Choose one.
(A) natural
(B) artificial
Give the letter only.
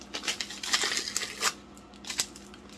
A